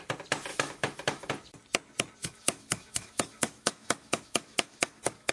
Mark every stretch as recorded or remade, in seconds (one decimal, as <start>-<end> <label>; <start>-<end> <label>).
0.0-0.5 recorded; 0.5-1.3 remade; 1.3-2.2 recorded; 2.2-5.3 remade